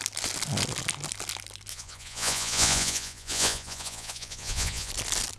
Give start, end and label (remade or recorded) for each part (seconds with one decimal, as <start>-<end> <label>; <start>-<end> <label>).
0.0-1.7 recorded; 1.7-4.9 remade; 4.9-5.4 recorded